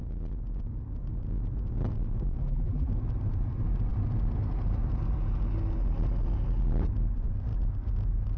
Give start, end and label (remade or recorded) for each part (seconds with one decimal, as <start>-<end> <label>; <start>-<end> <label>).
0.0-2.4 recorded; 2.4-2.9 remade; 2.9-8.4 recorded